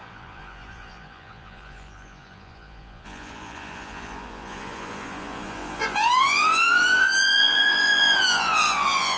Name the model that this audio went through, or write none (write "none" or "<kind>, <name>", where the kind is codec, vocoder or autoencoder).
vocoder, Vocos